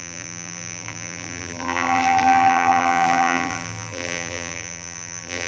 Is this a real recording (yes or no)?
no